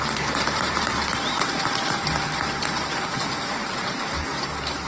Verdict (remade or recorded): remade